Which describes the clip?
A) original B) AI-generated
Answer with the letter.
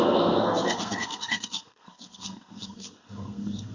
B